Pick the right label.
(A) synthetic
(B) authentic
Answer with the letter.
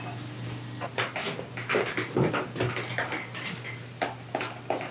B